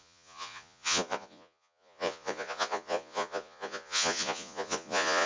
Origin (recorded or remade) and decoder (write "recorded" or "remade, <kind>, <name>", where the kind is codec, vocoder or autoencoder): remade, vocoder, Vocos